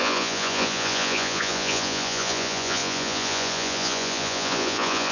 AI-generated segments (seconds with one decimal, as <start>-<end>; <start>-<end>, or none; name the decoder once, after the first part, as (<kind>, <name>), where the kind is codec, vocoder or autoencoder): 0.0-5.1 (vocoder, Vocos)